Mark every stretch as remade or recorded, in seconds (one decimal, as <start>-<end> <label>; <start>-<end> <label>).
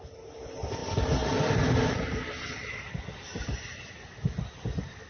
0.0-5.1 recorded